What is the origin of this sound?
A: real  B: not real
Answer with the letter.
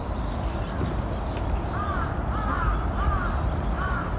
A